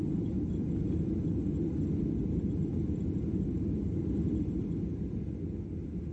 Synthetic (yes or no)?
no